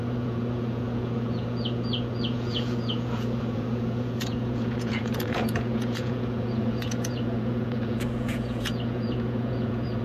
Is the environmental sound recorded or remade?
remade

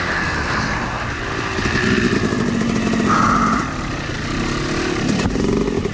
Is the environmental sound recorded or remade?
recorded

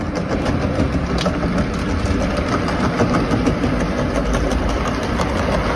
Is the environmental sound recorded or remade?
recorded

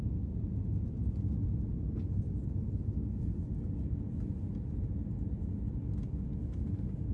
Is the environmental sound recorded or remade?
recorded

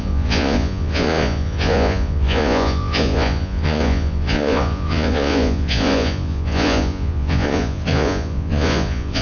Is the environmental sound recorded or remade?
remade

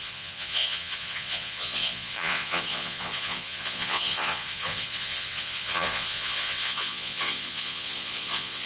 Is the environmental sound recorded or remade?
remade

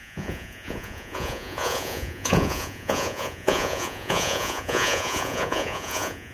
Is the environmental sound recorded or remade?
remade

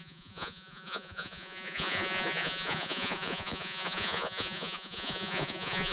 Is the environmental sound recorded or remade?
remade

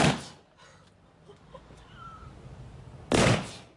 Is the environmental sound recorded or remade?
recorded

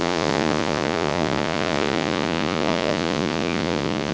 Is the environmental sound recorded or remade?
remade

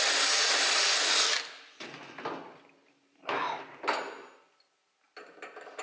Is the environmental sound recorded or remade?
recorded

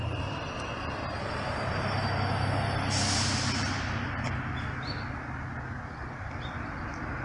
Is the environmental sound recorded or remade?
recorded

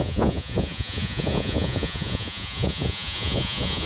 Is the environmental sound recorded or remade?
remade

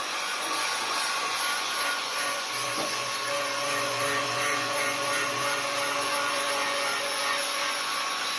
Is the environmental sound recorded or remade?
remade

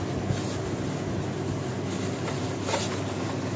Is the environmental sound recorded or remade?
recorded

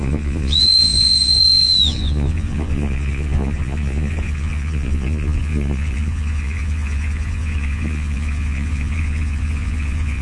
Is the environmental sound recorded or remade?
remade